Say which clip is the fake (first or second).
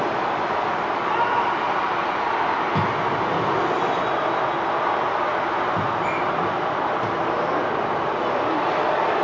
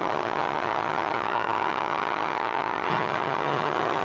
second